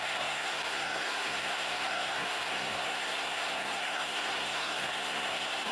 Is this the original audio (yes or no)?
no